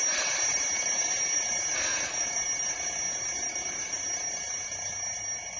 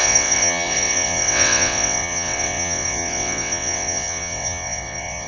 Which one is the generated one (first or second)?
second